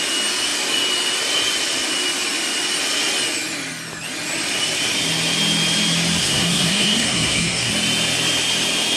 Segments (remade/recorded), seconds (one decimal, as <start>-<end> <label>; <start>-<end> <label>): 0.0-6.2 recorded; 6.2-7.7 remade; 7.7-9.0 recorded